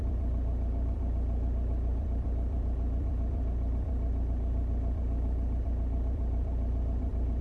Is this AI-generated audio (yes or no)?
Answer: yes